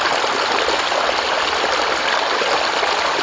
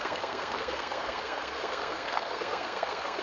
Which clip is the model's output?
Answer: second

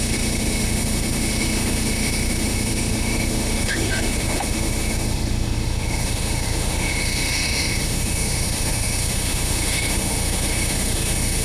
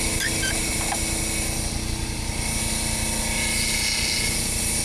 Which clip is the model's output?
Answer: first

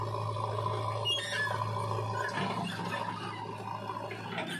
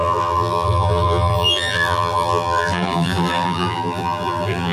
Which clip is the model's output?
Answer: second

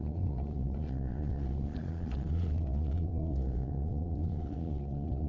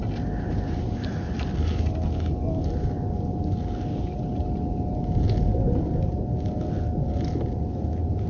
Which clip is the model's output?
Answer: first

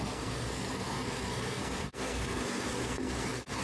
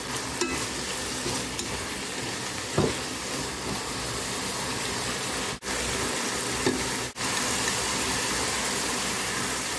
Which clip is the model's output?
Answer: first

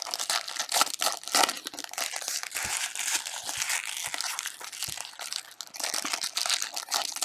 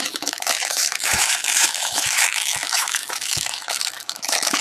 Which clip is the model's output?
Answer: second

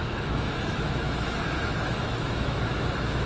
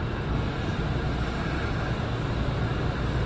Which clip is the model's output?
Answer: first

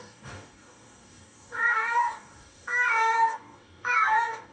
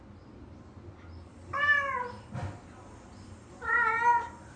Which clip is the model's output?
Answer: first